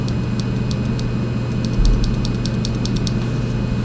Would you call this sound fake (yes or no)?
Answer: no